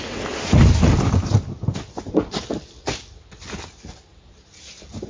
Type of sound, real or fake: real